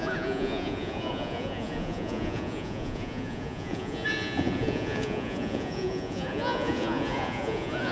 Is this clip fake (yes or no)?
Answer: yes